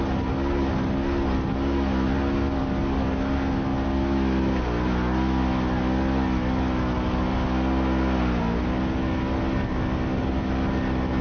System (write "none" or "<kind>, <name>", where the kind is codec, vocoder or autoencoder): none